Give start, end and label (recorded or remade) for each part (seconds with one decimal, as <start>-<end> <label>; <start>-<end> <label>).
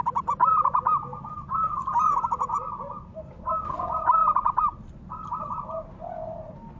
0.0-1.1 recorded; 1.1-3.5 remade; 3.5-4.2 recorded; 4.2-5.4 remade; 5.4-6.8 recorded